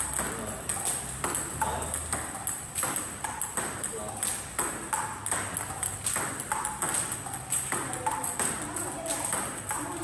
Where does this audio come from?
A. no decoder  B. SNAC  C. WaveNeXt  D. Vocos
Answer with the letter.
A